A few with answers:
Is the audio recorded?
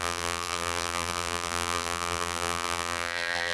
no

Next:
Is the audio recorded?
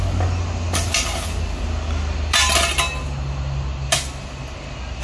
yes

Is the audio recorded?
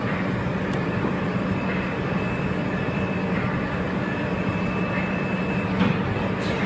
yes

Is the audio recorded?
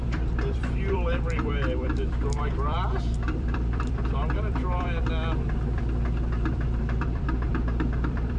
no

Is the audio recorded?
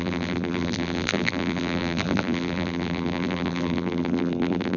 no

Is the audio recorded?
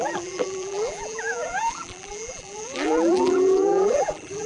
no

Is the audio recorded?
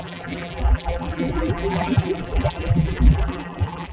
no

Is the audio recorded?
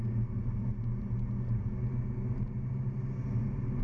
yes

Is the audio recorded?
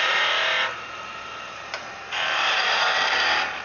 no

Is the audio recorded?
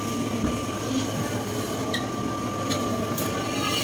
yes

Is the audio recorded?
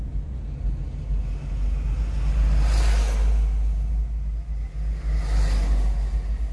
yes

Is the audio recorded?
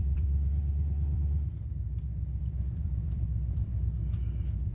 no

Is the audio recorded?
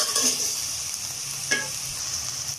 no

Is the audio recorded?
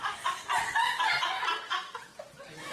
no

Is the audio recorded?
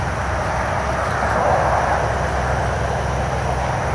yes